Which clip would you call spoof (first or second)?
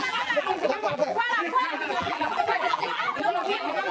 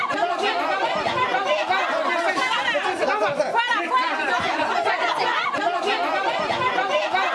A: first